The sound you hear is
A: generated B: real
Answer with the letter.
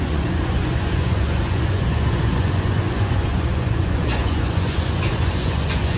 A